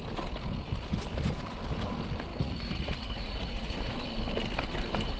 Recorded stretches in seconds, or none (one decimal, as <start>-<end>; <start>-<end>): 0.0-2.3; 3.9-5.2

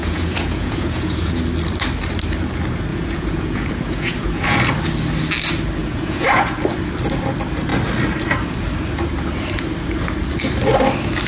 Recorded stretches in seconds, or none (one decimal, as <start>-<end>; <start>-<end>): 1.4-2.9; 4.7-5.8; 6.6-11.3

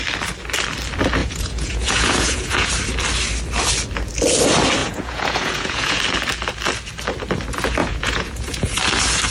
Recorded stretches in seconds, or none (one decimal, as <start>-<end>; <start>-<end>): 0.0-1.2; 2.7-4.8; 6.0-7.8; 8.8-9.3

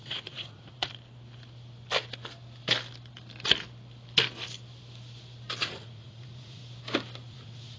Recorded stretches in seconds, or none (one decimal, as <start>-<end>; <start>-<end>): 0.9-5.6; 6.6-7.3

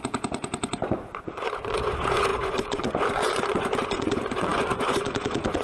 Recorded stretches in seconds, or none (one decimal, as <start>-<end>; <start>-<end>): none

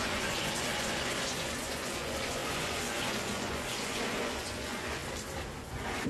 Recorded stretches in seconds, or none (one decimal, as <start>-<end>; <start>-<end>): 5.0-5.6